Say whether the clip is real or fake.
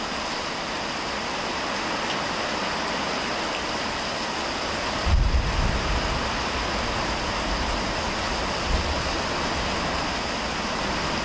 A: real